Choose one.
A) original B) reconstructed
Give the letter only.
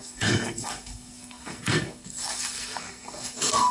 B